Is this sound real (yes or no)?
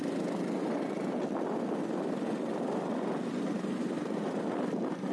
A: yes